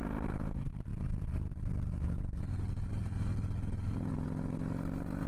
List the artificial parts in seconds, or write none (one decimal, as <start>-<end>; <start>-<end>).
none